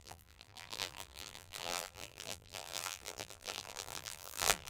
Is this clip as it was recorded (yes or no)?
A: no